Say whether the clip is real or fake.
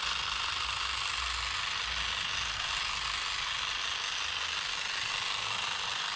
real